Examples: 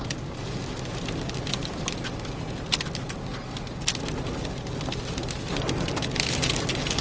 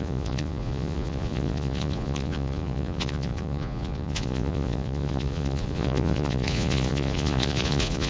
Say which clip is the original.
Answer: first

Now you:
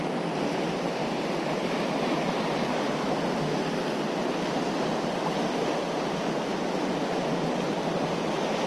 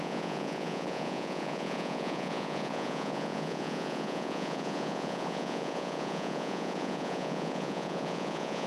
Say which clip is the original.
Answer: first